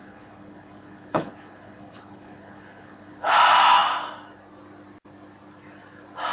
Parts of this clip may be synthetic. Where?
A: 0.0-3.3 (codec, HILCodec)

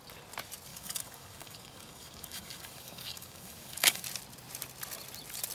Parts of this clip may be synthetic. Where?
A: 0.7-4.0 (codec, DAC)

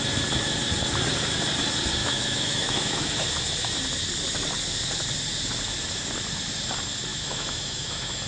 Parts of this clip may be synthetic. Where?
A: 2.0-3.1 (autoencoder, DAC-VAE); 7.1-8.3

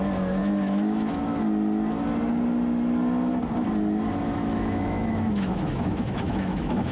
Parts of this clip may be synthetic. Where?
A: 0.4-1.4 (autoencoder, DAC-VAE); 4.4-6.9

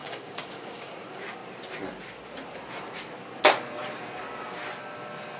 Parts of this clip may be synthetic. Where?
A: 0.0-0.9 (codec, DAC)

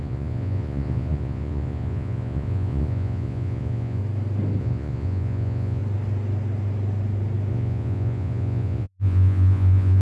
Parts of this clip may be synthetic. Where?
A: 0.0-4.0 (vocoder, Vocos); 4.6-5.8; 7.5-10.0

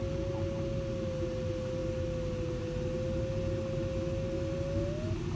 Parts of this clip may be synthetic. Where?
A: none